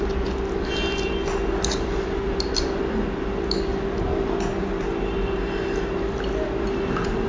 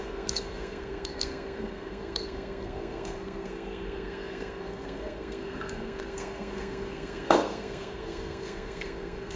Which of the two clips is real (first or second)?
first